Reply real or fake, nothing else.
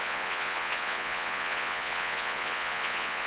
fake